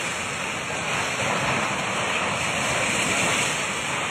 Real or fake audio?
real